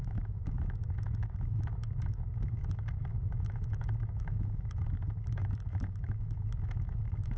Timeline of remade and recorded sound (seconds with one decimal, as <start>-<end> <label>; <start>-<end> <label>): 0.0-7.4 remade

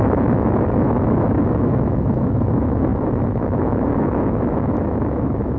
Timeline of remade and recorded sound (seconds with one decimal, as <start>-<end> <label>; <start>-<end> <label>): 0.0-5.6 remade

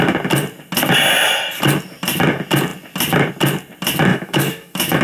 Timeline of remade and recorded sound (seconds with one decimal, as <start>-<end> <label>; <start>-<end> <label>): 0.0-4.1 recorded; 4.1-5.0 remade

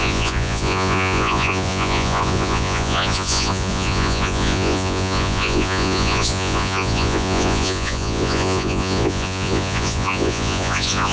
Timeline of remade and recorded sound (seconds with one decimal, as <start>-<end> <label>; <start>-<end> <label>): 0.0-11.1 remade

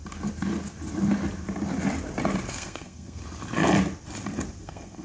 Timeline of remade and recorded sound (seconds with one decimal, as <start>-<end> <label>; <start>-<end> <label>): 0.0-2.5 recorded; 2.5-3.2 remade; 3.2-4.6 recorded; 4.6-5.0 remade